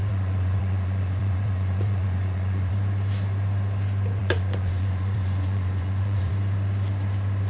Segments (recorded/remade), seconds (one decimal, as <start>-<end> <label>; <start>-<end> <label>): 0.0-2.7 remade; 2.7-4.2 recorded; 4.2-6.3 remade; 6.3-7.5 recorded